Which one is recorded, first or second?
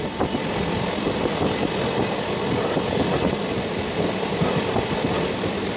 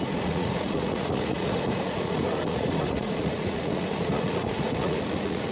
first